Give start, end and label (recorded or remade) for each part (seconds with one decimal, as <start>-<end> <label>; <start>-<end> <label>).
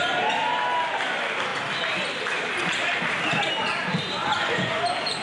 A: 0.0-4.2 recorded; 4.2-4.8 remade; 4.8-5.2 recorded